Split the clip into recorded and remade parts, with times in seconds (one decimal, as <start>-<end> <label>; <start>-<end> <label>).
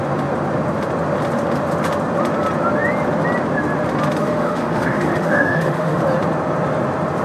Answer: 0.0-4.2 recorded; 4.2-6.0 remade; 6.0-7.2 recorded